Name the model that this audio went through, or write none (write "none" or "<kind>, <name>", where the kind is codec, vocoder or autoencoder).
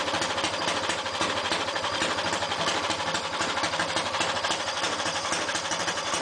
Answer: none